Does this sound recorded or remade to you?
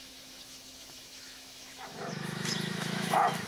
remade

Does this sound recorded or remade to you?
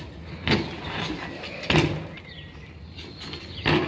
recorded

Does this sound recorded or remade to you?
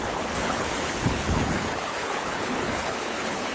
remade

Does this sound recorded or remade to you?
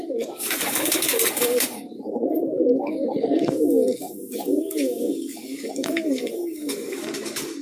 remade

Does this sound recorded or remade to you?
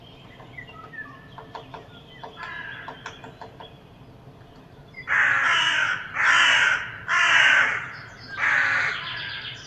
recorded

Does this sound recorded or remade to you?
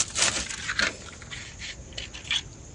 recorded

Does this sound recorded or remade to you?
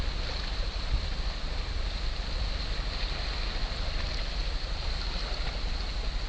recorded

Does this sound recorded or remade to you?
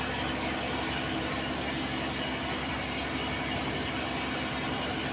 recorded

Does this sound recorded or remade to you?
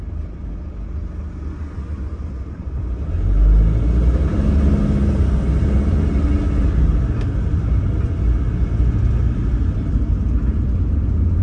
recorded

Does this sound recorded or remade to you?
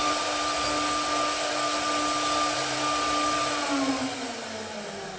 recorded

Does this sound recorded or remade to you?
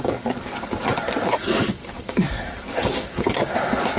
remade